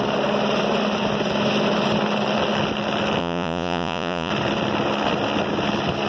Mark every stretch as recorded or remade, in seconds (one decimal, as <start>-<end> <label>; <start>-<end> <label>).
0.0-3.2 recorded; 3.2-4.3 remade; 4.3-6.1 recorded